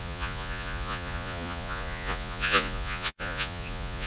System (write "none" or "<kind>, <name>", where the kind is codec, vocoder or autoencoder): vocoder, Vocos